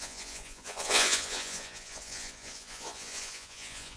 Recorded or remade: remade